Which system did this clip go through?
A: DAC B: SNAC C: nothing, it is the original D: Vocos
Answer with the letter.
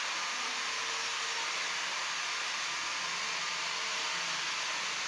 C